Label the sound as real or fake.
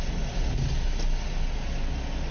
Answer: real